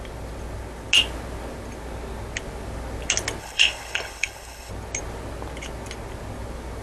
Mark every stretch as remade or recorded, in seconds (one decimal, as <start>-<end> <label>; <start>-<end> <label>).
0.0-3.4 recorded; 3.4-4.7 remade; 4.7-6.8 recorded